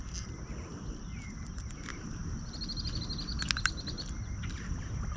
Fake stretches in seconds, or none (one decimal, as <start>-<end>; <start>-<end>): none